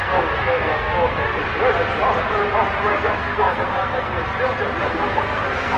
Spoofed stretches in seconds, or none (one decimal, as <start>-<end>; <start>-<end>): 0.0-1.4; 2.9-4.2; 4.8-5.8

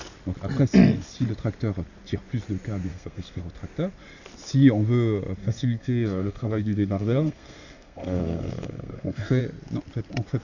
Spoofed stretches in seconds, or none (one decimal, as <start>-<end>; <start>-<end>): 2.9-3.4; 5.4-9.4

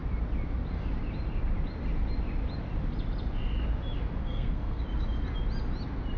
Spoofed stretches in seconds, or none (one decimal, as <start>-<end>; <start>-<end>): 4.2-4.8

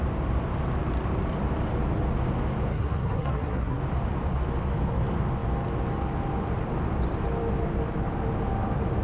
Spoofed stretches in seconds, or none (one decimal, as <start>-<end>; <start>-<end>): 2.7-3.8